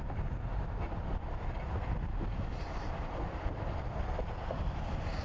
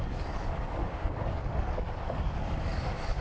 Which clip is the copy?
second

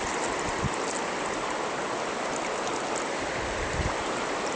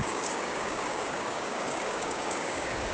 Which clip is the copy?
second